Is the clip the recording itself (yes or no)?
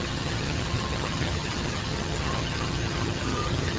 no